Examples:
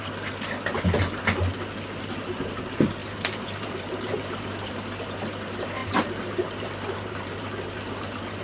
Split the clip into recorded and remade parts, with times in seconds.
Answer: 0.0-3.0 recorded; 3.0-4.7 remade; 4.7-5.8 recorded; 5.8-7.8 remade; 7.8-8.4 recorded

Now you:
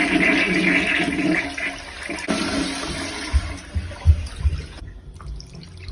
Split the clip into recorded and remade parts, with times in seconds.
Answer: 0.0-5.9 recorded

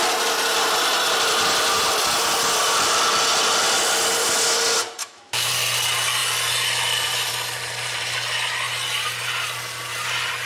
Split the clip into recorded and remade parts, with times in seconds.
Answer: 0.0-5.0 recorded; 5.0-5.5 remade; 5.5-10.5 recorded

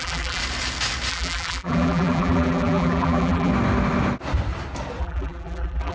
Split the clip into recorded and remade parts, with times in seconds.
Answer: 0.0-0.4 remade; 0.4-1.1 recorded; 1.1-3.5 remade; 3.5-5.0 recorded; 5.0-5.9 remade

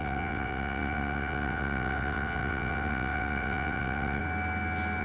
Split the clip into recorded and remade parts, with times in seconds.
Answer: 0.0-4.2 remade; 4.2-5.0 recorded

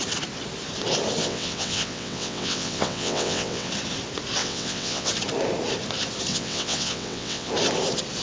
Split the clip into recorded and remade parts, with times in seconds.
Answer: 0.0-1.2 recorded; 1.2-3.7 remade; 3.7-4.4 recorded; 4.4-5.1 remade; 5.1-6.3 recorded; 6.3-7.5 remade; 7.5-8.2 recorded